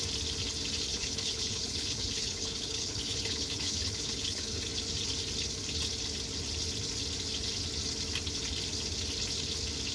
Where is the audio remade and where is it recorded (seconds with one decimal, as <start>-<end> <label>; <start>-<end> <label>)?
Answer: 0.0-0.9 recorded; 0.9-4.6 remade; 4.6-9.9 recorded